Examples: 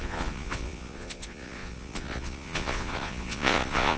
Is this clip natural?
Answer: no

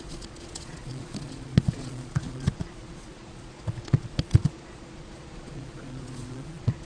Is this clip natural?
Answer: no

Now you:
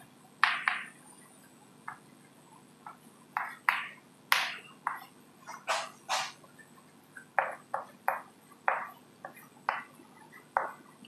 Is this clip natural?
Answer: yes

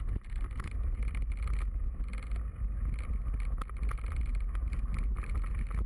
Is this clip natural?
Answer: yes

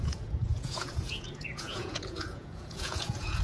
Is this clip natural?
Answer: no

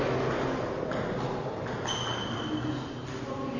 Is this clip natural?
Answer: yes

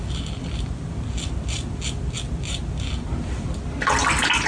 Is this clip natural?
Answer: yes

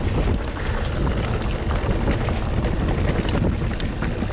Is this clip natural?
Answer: yes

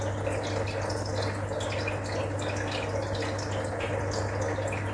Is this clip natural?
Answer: yes